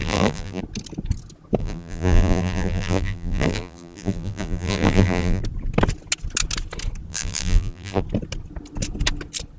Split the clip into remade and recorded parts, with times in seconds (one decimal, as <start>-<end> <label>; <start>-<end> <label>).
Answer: 0.0-0.6 remade; 0.6-1.6 recorded; 1.6-5.4 remade; 5.4-7.1 recorded; 7.1-8.0 remade; 8.0-9.6 recorded